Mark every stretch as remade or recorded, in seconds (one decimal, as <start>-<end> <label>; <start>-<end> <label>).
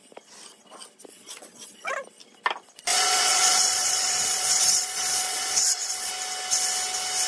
0.0-1.1 recorded; 1.1-1.9 remade; 1.9-2.9 recorded; 2.9-6.1 remade; 6.1-7.3 recorded